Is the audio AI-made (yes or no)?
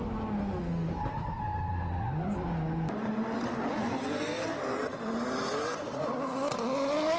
no